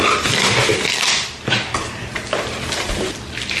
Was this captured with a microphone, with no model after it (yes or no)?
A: yes